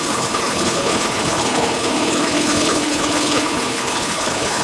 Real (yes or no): no